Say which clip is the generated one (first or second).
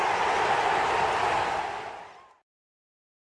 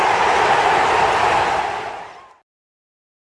second